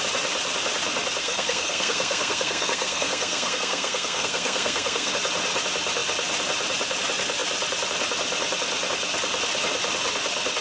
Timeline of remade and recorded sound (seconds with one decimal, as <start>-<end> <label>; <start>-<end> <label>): 0.0-1.2 recorded; 1.2-5.1 remade; 5.1-10.6 recorded